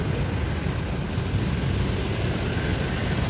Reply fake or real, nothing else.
real